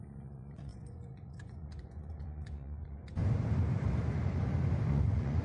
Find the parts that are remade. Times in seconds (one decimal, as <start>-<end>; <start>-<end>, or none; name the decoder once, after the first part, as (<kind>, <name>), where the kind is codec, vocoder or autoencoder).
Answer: 0.0-3.2 (vocoder, Vocos); 4.9-5.4

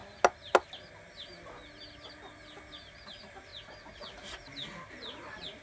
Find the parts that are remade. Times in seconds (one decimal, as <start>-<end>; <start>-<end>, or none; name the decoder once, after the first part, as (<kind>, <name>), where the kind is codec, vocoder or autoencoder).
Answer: 3.1-3.5 (vocoder, BigVGAN v2); 4.9-5.6

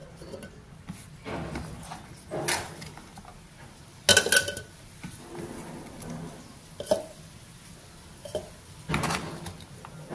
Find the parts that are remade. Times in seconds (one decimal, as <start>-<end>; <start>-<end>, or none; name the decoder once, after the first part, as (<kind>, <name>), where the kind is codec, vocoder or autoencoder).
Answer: none